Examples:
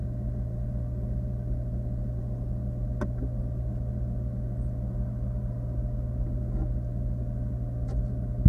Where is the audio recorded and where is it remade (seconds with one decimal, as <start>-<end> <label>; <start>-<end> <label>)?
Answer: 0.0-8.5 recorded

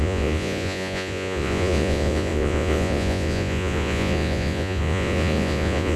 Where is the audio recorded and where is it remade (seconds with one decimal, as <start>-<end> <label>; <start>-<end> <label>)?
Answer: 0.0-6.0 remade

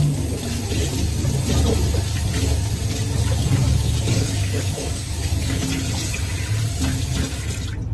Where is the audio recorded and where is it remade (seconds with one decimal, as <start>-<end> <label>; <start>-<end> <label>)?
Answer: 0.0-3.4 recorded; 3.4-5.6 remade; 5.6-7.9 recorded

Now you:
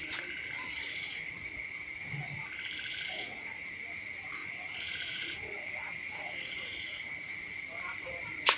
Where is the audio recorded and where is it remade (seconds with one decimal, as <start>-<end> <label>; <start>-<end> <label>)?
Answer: 0.0-0.7 recorded; 0.7-2.3 remade; 2.3-2.9 recorded; 2.9-3.7 remade; 3.7-4.4 recorded; 4.4-7.7 remade; 7.7-8.6 recorded

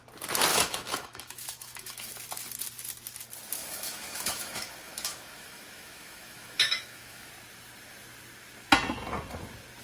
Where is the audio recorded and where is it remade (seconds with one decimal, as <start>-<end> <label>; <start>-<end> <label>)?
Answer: 0.0-0.5 recorded; 0.5-2.1 remade; 2.1-3.6 recorded; 3.6-7.3 remade; 7.3-9.8 recorded